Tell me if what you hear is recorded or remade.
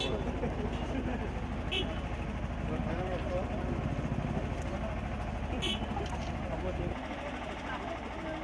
recorded